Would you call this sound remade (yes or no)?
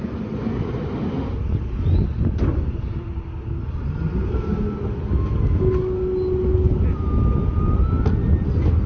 no